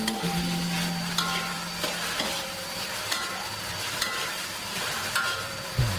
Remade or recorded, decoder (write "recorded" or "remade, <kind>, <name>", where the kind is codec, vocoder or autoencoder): remade, vocoder, BigVGAN v2